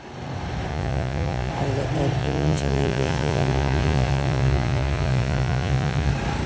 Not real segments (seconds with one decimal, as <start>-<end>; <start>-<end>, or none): 0.7-1.5; 2.2-6.1